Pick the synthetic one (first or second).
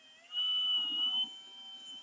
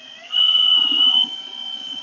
second